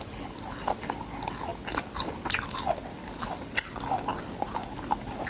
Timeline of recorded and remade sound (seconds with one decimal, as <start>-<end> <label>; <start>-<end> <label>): 0.0-5.3 recorded